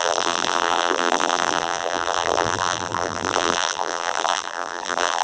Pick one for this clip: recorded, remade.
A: remade